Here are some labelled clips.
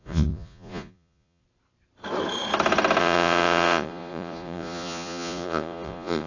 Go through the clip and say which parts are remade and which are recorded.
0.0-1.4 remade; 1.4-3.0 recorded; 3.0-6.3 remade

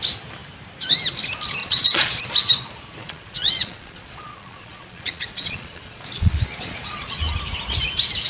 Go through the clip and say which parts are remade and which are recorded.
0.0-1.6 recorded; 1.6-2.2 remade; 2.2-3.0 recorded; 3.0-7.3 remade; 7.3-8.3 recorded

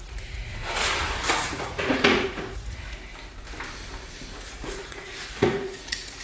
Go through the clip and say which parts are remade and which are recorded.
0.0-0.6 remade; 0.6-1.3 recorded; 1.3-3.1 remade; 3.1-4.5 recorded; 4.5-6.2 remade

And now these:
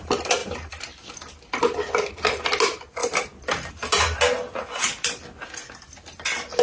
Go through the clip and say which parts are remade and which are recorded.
0.0-6.6 recorded

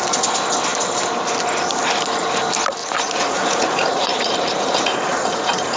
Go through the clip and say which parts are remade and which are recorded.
0.0-2.8 recorded; 2.8-5.8 remade